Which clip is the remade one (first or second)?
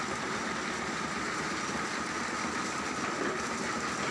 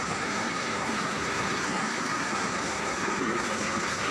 second